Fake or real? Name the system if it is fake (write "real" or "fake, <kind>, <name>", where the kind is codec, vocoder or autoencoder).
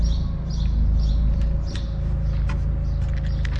real